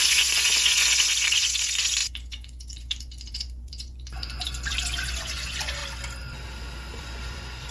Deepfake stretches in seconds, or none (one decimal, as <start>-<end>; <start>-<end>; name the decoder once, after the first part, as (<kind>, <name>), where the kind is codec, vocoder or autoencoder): 0.0-5.8 (vocoder, Vocos); 7.0-7.7